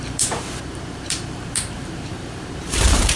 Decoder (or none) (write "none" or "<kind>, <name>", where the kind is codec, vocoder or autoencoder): vocoder, BigVGAN v2